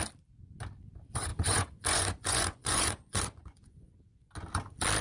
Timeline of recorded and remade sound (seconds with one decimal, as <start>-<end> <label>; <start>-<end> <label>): 0.0-1.3 recorded; 1.3-4.3 remade; 4.3-5.0 recorded